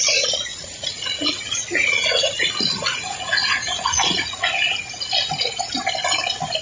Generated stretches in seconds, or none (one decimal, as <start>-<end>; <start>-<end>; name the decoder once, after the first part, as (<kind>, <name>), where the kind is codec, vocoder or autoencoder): 0.5-4.5 (vocoder, Vocos)